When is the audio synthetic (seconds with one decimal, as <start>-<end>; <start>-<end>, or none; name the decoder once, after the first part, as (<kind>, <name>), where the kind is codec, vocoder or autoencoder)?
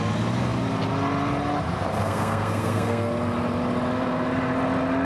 2.0-3.1 (codec, SNAC)